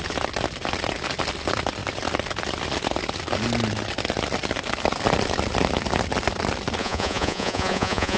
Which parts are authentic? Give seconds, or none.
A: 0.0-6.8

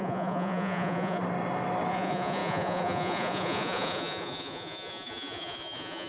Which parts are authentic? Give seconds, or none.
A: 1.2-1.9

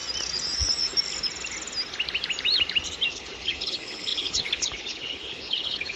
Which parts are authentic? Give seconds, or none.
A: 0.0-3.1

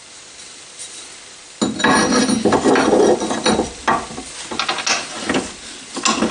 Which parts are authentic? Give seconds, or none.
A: 0.0-6.3

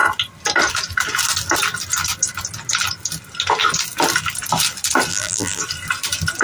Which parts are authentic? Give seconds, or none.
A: 0.0-5.1; 5.6-6.4